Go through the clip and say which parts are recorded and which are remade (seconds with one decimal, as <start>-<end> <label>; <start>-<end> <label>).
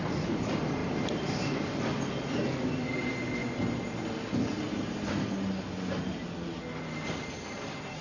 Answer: 0.0-8.0 recorded